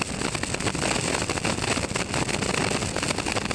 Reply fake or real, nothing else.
real